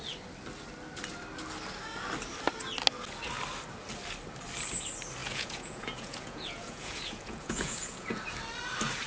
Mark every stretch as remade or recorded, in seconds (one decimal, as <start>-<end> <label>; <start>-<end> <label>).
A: 0.0-5.2 recorded; 5.2-8.2 remade; 8.2-9.1 recorded